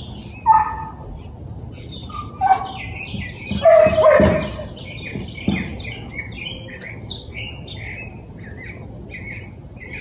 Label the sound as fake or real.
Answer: real